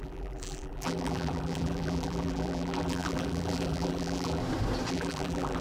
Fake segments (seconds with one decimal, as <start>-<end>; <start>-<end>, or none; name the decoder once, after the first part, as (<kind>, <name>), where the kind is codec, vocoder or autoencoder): 0.0-4.4 (vocoder, BigVGAN v2); 4.9-5.6

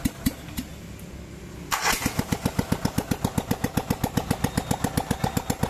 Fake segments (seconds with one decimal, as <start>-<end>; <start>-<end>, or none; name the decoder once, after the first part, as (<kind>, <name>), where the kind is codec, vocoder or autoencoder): none

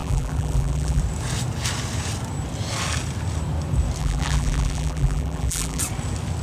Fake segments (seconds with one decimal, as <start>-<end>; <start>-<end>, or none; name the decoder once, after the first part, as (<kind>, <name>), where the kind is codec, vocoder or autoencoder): 0.0-1.0 (vocoder, BigVGAN v2); 4.0-5.8

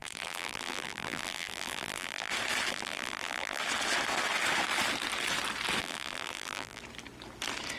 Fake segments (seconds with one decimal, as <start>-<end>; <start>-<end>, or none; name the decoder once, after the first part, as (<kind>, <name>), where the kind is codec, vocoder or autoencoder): 0.0-2.3 (vocoder, BigVGAN v2); 2.7-3.6; 5.8-6.8

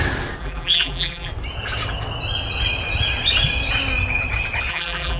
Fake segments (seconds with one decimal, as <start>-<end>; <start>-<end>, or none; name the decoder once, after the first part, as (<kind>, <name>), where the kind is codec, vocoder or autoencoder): 0.4-1.3 (vocoder, BigVGAN v2); 4.7-5.2